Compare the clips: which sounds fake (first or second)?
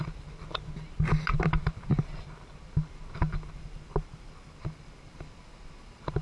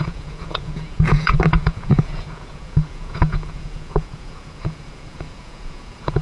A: second